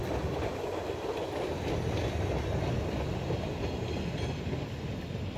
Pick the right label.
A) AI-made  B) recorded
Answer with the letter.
B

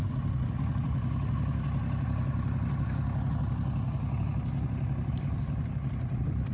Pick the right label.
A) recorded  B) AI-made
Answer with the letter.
A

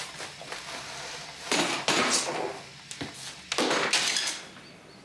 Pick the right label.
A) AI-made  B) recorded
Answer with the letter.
B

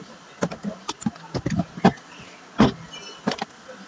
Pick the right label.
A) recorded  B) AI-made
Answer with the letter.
A